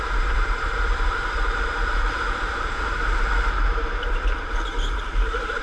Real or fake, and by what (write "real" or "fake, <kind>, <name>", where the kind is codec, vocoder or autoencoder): fake, vocoder, BigVGAN v2